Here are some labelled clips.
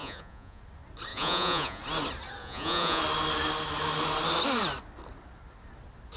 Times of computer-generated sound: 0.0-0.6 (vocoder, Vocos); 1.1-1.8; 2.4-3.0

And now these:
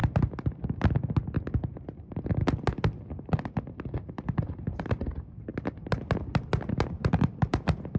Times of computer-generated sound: 4.7-5.5 (vocoder, BigVGAN v2); 6.7-8.0